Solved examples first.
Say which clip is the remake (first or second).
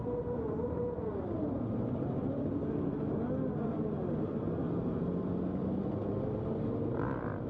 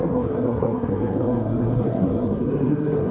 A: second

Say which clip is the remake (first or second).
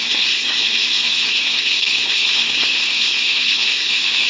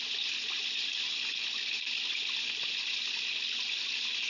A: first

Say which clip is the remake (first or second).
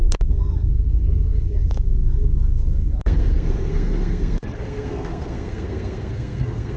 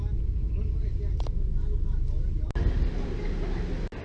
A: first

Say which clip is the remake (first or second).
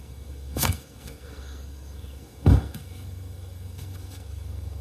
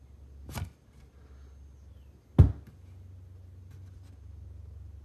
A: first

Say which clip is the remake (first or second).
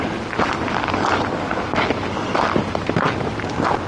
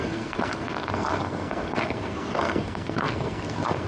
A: second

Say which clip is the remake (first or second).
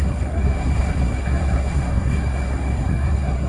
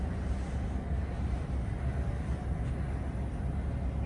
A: first